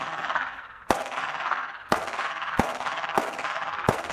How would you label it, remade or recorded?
remade